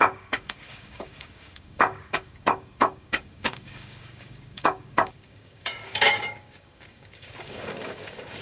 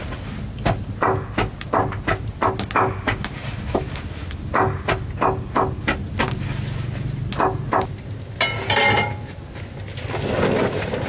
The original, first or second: second